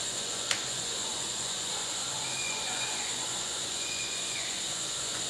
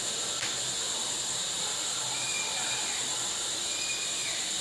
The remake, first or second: first